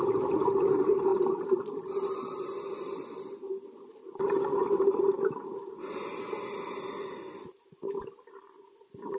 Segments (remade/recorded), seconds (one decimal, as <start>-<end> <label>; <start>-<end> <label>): 0.0-9.2 recorded